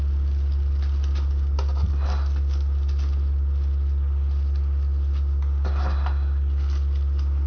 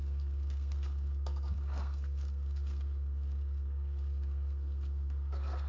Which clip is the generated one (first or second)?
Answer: second